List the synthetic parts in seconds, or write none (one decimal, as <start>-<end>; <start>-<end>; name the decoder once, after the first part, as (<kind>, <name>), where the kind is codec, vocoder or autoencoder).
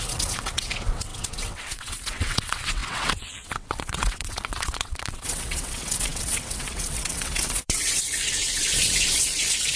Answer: 0.0-9.8 (vocoder, WaveNeXt)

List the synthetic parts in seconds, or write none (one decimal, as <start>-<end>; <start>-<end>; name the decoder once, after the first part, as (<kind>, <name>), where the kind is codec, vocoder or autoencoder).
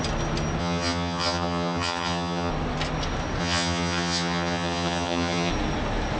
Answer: 0.6-2.5 (vocoder, HiFi-GAN); 3.4-5.5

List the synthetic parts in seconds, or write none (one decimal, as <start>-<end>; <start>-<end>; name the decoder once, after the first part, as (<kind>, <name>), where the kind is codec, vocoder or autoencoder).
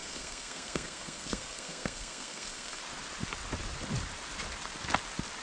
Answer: 0.0-2.8 (codec, SNAC)